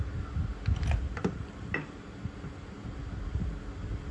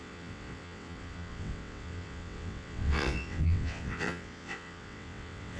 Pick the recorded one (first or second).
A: first